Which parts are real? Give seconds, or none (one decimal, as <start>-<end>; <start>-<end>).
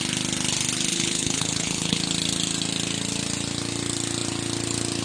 0.0-0.9; 2.0-5.0